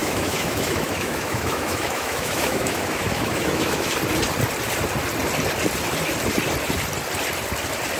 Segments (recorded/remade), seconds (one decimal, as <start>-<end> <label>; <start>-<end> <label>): 0.0-3.9 remade; 3.9-8.0 recorded